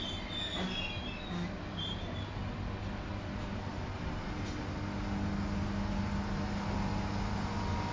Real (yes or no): yes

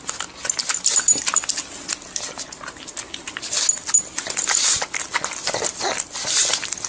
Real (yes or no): yes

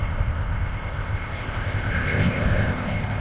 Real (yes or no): no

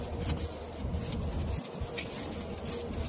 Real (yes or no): yes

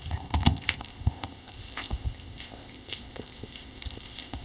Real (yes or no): no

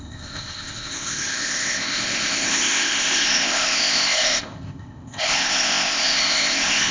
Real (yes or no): no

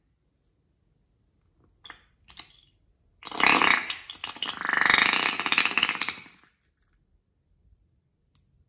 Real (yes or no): yes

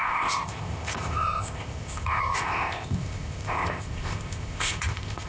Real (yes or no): no